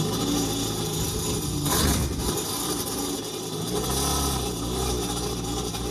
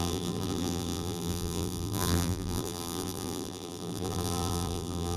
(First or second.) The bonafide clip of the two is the first